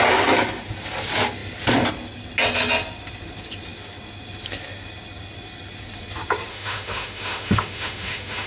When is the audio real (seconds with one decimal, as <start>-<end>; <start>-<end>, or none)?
0.0-6.5